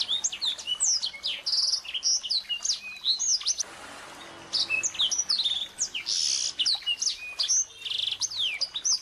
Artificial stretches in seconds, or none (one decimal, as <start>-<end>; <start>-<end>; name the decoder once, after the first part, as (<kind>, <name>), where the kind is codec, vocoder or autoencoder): none